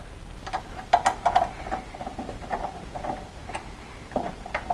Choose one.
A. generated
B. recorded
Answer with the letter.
B